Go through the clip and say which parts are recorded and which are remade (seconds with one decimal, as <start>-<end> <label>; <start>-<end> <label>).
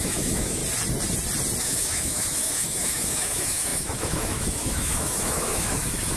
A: 0.0-0.6 remade; 0.6-1.6 recorded; 1.6-6.2 remade